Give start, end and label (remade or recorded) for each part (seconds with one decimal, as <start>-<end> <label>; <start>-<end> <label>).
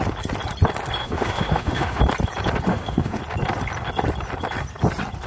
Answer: 0.0-1.0 recorded; 1.0-2.0 remade; 2.0-2.7 recorded; 2.7-3.2 remade; 3.2-5.3 recorded